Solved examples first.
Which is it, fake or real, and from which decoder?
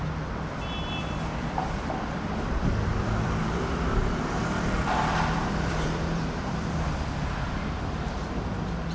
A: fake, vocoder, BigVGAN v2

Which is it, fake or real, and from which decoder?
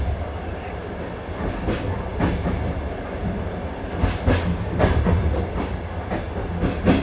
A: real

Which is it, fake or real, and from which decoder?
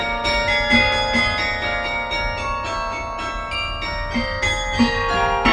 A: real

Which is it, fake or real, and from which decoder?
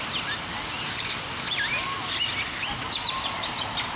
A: fake, vocoder, BigVGAN v2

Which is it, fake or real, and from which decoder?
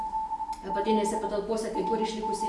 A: real